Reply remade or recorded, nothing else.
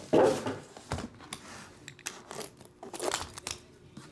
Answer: recorded